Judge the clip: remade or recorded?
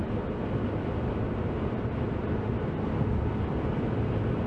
recorded